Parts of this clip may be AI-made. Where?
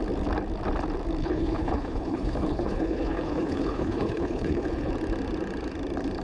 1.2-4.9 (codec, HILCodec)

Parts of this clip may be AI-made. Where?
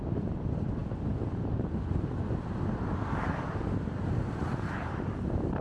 none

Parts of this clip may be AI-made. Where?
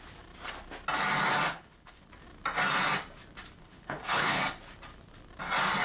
1.5-2.1 (codec, HILCodec); 3.6-4.4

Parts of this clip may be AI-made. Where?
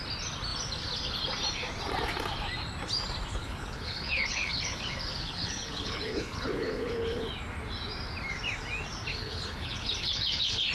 3.3-7.3 (codec, HILCodec); 9.1-10.7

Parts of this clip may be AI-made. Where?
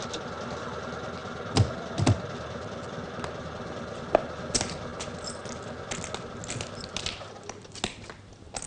none